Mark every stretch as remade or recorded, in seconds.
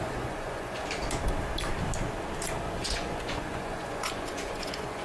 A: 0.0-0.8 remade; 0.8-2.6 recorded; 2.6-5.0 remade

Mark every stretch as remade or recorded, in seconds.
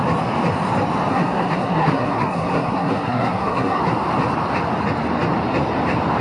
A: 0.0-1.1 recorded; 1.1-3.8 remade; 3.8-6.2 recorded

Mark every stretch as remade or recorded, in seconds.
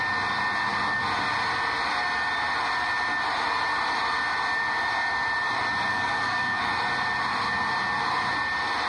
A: 0.0-5.9 recorded; 5.9-6.7 remade; 6.7-8.9 recorded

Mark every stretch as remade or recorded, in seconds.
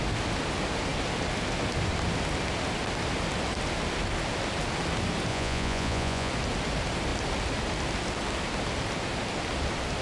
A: 0.0-5.3 recorded; 5.3-6.3 remade; 6.3-10.0 recorded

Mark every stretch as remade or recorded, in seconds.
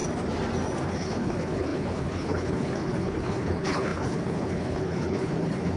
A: 0.0-0.9 recorded; 0.9-5.8 remade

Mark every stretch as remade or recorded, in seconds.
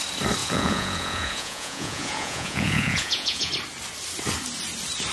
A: 0.0-0.4 recorded; 0.4-3.5 remade; 3.5-5.1 recorded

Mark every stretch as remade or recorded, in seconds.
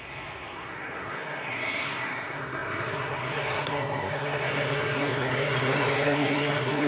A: 0.0-6.9 remade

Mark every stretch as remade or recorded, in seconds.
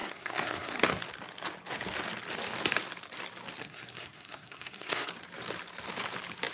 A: 0.0-0.9 remade; 0.9-3.6 recorded; 3.6-5.1 remade; 5.1-6.5 recorded